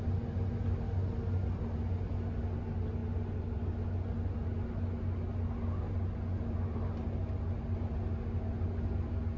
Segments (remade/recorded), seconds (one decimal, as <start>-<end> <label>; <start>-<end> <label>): 0.0-9.4 recorded